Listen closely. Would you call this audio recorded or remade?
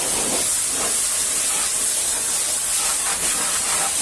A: recorded